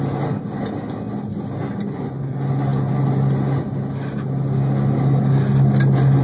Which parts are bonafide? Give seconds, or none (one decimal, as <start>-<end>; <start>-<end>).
0.0-6.2